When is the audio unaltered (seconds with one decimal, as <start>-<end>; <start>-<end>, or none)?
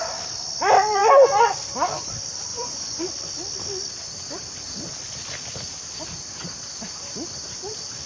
0.0-2.5; 3.0-8.1